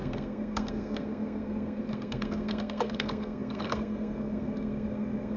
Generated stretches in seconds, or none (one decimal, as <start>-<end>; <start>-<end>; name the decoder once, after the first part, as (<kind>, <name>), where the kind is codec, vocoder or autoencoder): 0.0-5.4 (codec, SNAC)